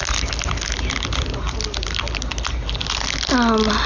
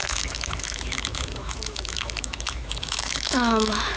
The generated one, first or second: second